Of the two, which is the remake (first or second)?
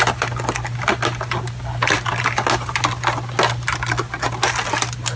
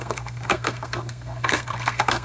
second